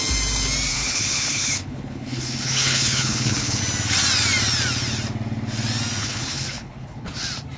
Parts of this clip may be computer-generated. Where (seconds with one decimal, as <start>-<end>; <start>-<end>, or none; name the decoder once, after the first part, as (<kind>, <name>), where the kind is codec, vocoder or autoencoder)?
0.7-3.6 (codec, HILCodec); 6.0-7.1